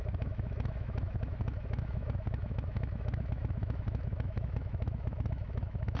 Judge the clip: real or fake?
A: fake